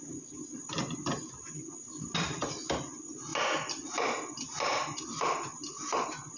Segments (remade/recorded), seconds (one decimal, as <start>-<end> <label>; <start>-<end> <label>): 0.0-6.4 recorded